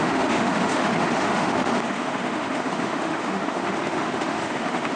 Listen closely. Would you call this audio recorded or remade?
remade